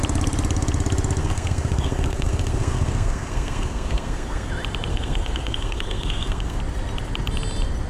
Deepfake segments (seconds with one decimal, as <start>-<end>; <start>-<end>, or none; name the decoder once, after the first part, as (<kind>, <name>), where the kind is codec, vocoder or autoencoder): 1.2-4.5 (codec, SNAC); 4.9-6.6